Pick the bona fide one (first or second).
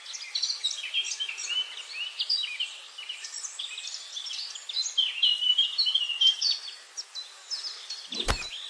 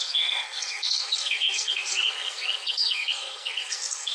first